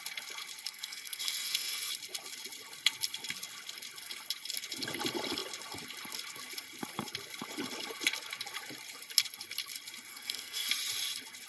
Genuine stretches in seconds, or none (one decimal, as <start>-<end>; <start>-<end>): 0.0-0.7; 1.9-10.1; 10.7-11.5